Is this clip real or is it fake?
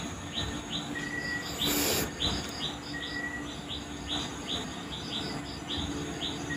real